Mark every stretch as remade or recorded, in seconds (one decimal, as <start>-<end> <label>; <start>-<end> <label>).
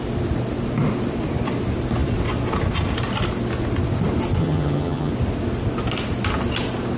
0.0-4.4 recorded; 4.4-5.1 remade; 5.1-7.0 recorded